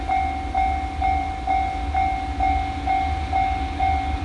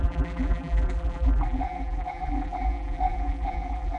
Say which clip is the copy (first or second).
second